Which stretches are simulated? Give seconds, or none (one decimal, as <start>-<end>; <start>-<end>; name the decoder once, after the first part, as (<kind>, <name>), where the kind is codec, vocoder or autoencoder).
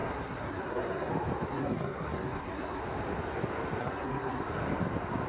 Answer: 0.0-1.1 (codec, SNAC); 1.5-2.8; 3.8-4.4